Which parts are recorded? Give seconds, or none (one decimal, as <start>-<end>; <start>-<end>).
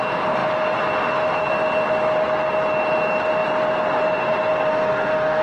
0.0-4.5